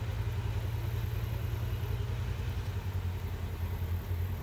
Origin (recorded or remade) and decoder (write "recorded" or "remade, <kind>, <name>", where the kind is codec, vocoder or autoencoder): recorded